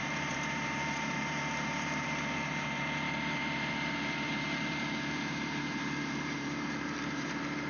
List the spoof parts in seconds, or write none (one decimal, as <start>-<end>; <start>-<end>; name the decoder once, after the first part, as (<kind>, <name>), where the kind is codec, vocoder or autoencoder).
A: 0.0-7.7 (vocoder, BigVGAN v2)